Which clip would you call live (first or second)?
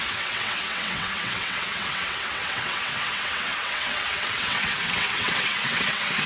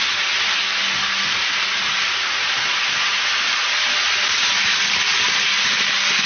second